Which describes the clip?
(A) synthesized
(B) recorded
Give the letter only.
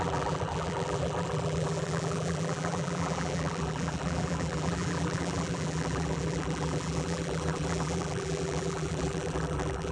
A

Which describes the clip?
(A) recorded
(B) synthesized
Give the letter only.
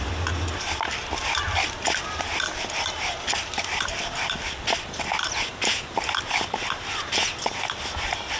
A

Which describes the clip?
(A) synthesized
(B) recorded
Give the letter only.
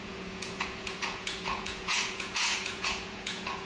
A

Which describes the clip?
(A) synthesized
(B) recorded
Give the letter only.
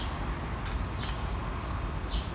B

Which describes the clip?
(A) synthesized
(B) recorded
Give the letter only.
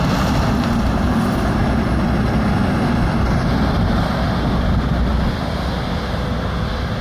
B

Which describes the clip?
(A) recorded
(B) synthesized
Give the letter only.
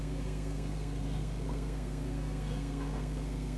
B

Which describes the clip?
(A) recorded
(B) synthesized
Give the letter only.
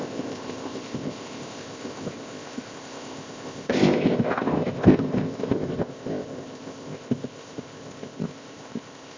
B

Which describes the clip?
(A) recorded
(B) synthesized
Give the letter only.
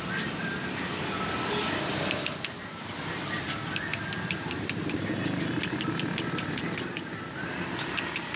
A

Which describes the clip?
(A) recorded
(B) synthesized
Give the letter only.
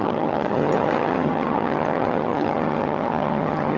B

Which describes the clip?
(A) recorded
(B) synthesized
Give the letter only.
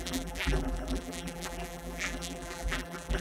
B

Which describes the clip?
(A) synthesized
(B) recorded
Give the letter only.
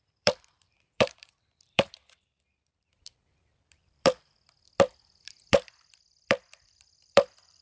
A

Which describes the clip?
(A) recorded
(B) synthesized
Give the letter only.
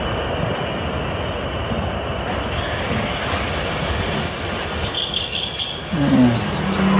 A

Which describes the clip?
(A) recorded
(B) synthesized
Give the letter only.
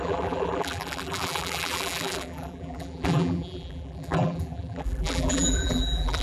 B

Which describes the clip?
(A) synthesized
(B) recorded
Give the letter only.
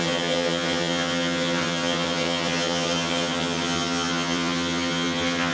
A